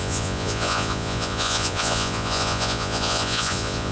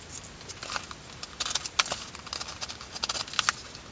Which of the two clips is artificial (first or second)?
first